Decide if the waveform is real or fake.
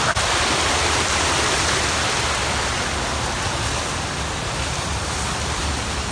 real